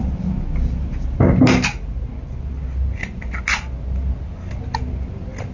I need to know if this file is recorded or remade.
recorded